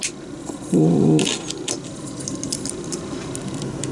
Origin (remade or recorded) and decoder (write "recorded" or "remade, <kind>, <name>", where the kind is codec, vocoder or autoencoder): recorded